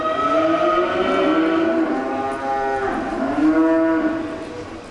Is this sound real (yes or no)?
yes